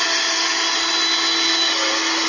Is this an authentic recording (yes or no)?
yes